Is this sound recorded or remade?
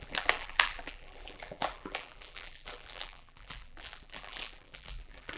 remade